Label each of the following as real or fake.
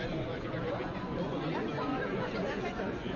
fake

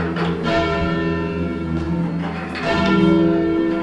real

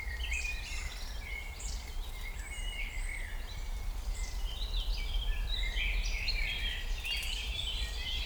fake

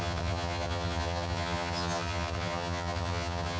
fake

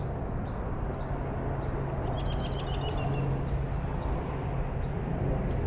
real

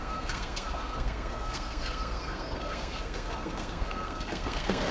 fake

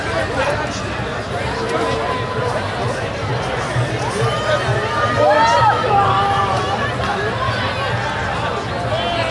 real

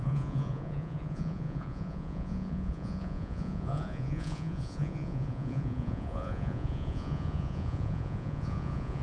fake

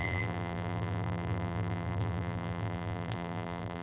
fake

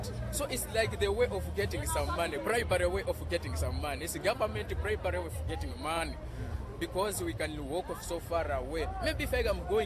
real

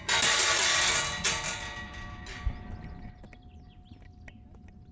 real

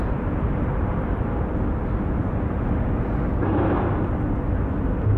real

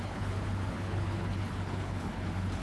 fake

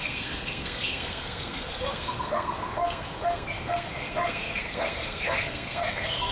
fake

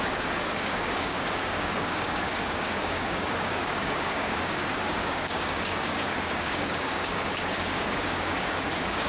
fake